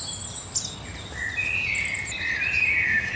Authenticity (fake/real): real